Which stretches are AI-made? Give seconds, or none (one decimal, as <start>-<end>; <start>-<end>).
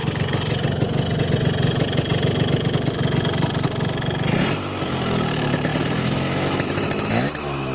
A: 4.6-7.7